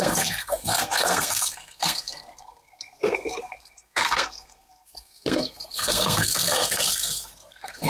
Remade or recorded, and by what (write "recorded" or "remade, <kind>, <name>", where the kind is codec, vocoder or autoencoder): remade, codec, SNAC